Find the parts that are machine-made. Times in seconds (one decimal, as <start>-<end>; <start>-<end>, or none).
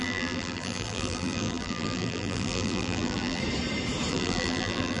0.0-3.4; 4.1-5.0